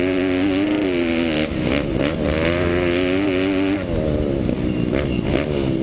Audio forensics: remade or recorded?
recorded